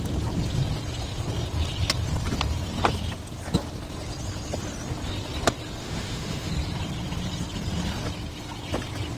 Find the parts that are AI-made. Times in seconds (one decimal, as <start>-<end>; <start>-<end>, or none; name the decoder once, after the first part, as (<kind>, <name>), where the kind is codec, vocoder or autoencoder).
5.8-6.5 (autoencoder, DAC-VAE)